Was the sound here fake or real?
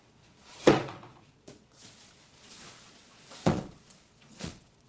fake